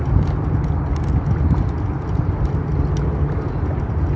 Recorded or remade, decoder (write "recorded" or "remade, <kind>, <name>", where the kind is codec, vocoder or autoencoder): recorded